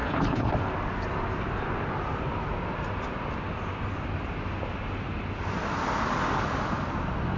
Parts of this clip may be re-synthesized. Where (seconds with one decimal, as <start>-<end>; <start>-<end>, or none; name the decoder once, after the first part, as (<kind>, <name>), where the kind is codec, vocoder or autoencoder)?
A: 0.0-0.5 (codec, HILCodec)